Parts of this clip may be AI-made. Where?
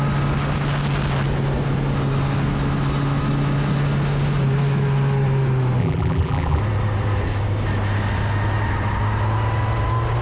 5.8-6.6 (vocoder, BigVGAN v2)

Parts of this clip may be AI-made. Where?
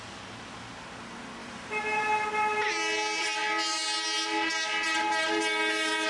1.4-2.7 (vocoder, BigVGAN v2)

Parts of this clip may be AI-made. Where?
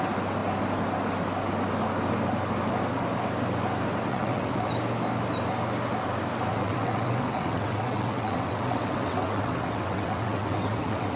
4.1-4.7 (vocoder, WaveNeXt); 6.5-11.2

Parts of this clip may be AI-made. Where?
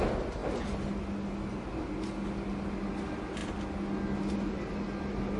none